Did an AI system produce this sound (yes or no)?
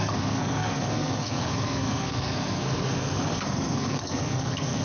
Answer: yes